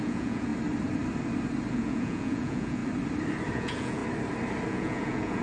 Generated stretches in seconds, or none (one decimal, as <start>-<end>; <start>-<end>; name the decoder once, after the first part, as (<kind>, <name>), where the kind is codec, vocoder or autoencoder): 0.0-0.5 (vocoder, Vocos); 1.7-2.8; 3.5-4.0; 4.7-5.4